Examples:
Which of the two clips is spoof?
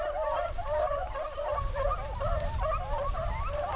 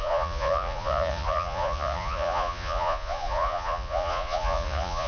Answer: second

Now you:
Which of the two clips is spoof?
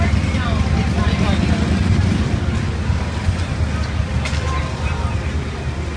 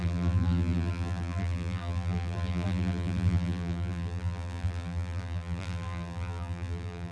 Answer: second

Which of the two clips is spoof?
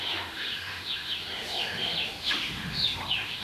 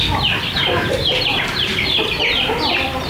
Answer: first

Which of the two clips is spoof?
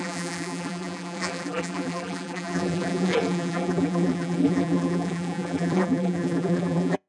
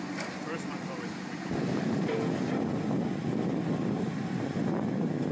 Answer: first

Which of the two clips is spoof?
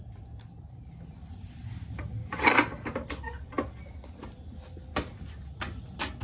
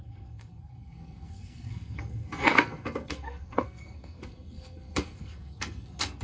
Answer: second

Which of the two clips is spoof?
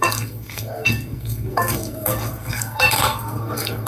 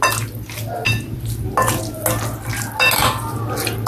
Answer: first